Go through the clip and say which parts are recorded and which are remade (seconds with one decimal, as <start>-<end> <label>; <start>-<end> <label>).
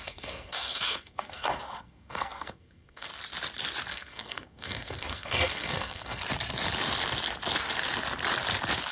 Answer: 0.0-3.1 remade; 3.1-3.9 recorded; 3.9-6.2 remade; 6.2-8.9 recorded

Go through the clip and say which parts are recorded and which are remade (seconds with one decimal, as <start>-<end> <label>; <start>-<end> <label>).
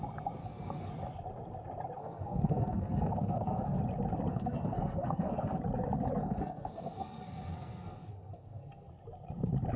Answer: 0.0-0.4 recorded; 0.4-0.9 remade; 0.9-2.0 recorded; 2.0-3.8 remade; 3.8-4.3 recorded; 4.3-5.6 remade; 5.6-6.2 recorded; 6.2-8.9 remade; 8.9-9.8 recorded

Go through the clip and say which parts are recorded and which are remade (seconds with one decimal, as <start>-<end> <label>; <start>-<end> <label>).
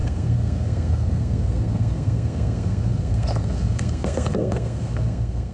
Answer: 0.0-5.5 remade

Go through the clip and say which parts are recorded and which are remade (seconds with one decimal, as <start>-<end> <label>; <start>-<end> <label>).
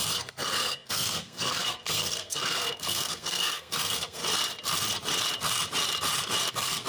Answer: 0.0-4.2 remade; 4.2-6.5 recorded; 6.5-6.9 remade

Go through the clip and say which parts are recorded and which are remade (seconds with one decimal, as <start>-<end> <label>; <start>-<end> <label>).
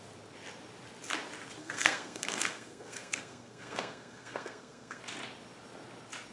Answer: 0.0-1.6 recorded; 1.6-5.0 remade; 5.0-6.3 recorded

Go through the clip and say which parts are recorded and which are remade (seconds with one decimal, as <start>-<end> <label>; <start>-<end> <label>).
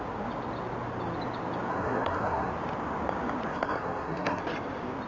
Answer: 0.0-1.7 recorded; 1.7-2.5 remade; 2.5-3.5 recorded; 3.5-4.4 remade; 4.4-5.1 recorded